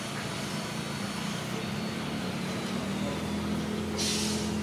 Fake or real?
real